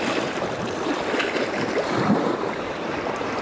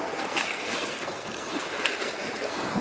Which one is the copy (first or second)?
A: second